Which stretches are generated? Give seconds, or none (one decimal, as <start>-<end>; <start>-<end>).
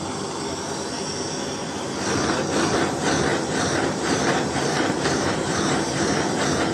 3.3-6.0